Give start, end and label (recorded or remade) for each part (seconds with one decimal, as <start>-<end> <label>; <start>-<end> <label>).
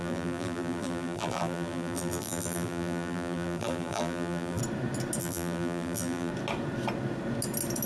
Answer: 0.0-4.6 remade; 4.6-5.2 recorded; 5.2-6.3 remade; 6.3-7.9 recorded